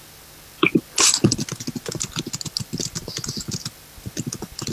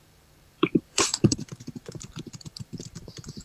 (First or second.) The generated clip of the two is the second